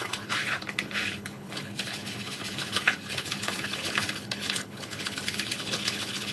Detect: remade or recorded remade